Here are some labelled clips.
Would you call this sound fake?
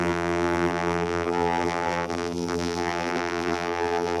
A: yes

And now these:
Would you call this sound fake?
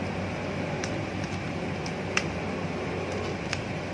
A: no